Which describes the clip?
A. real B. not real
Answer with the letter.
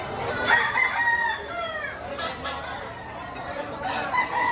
A